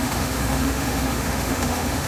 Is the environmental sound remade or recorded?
remade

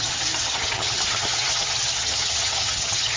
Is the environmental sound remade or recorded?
remade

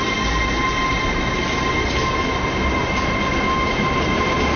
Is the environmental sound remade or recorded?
recorded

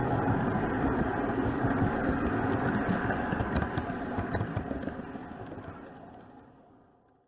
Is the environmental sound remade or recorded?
recorded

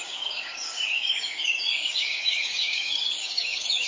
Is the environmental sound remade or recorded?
remade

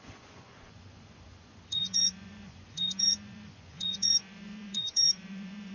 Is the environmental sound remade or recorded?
remade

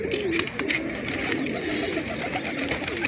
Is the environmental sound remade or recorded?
recorded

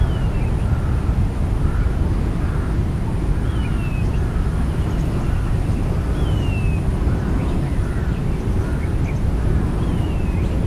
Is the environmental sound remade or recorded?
recorded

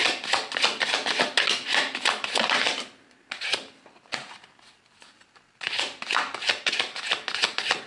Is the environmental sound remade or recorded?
recorded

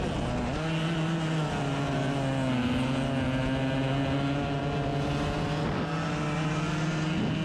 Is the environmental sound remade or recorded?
recorded